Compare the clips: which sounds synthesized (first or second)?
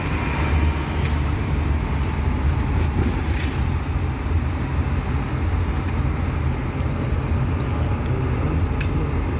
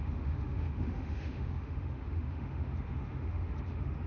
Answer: second